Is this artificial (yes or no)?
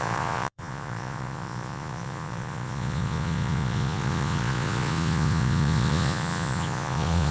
yes